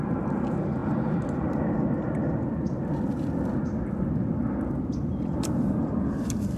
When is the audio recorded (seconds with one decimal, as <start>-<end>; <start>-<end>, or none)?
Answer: 0.0-6.6